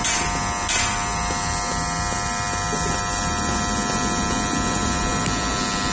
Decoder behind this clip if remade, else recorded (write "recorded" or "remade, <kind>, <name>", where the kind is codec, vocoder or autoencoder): recorded